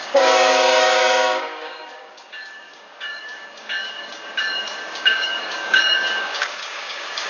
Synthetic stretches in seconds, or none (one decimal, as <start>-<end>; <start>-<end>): 0.0-7.3